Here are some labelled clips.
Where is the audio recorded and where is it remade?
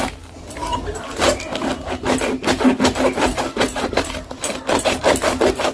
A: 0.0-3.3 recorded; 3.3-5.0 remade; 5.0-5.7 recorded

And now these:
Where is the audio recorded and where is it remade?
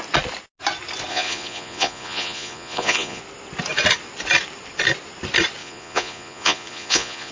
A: 0.0-1.1 recorded; 1.1-3.2 remade; 3.2-5.6 recorded; 5.6-7.3 remade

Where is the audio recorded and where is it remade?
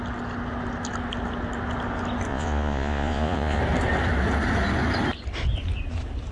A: 0.0-2.3 recorded; 2.3-3.6 remade; 3.6-6.3 recorded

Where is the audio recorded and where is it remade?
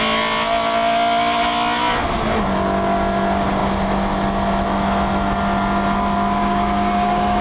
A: 0.0-6.4 recorded; 6.4-7.4 remade